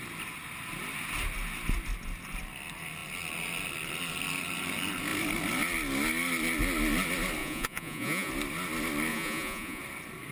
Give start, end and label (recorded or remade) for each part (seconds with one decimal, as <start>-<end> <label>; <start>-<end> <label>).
0.0-7.4 recorded; 7.4-8.3 remade; 8.3-9.1 recorded; 9.1-9.8 remade; 9.8-10.3 recorded